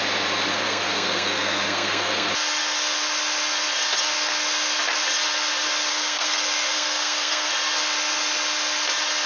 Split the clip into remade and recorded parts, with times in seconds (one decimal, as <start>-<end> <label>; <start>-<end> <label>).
0.0-0.5 recorded; 0.5-2.3 remade; 2.3-5.9 recorded; 5.9-7.5 remade; 7.5-9.3 recorded